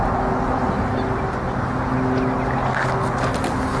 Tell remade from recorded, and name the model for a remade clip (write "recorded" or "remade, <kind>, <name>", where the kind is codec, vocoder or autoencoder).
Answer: recorded